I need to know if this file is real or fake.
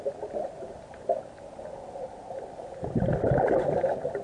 real